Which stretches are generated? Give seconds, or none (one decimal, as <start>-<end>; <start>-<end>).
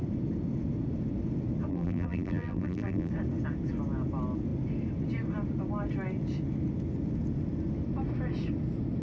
1.7-3.1